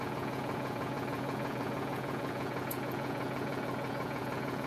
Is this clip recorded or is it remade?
remade